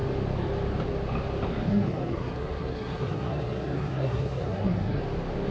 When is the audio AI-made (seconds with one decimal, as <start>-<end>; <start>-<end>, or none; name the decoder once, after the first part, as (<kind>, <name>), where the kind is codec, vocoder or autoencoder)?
1.7-5.0 (codec, SNAC)